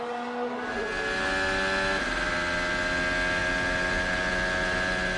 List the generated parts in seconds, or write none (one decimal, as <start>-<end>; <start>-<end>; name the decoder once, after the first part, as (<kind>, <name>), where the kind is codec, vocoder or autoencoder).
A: none